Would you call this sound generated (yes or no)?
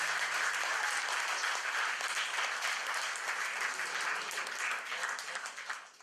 no